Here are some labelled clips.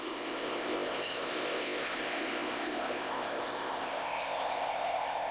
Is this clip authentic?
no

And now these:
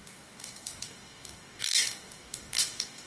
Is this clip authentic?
no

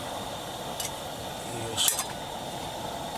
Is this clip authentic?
yes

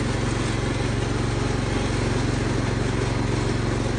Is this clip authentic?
yes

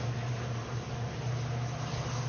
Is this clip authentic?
yes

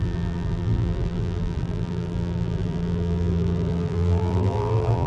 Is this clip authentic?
no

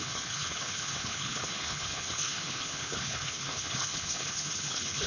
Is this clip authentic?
no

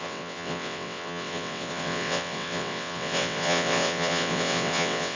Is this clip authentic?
no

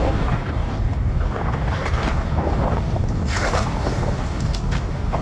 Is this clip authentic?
no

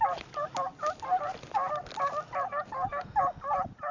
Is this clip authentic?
yes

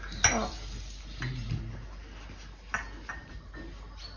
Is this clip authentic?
yes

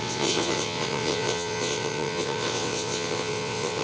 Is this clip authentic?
no